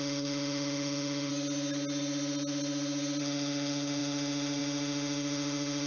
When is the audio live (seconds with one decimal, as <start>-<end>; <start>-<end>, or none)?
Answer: 1.3-3.2